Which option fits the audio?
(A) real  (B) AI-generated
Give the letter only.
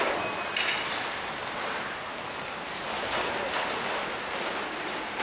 A